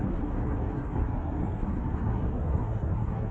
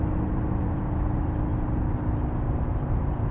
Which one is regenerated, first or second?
first